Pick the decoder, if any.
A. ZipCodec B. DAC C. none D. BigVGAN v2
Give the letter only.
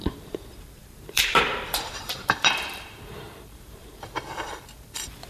D